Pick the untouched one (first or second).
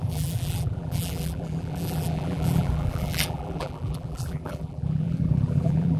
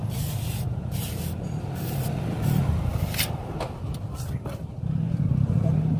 second